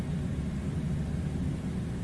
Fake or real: real